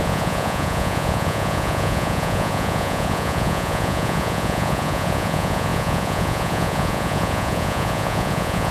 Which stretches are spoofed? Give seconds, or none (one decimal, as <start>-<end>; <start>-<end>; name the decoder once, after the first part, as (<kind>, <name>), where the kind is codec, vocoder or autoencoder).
0.0-8.7 (vocoder, Vocos)